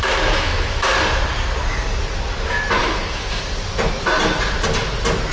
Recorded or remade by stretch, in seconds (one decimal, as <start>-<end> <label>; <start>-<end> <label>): 0.0-0.9 remade; 0.9-2.8 recorded; 2.8-3.4 remade; 3.4-5.3 recorded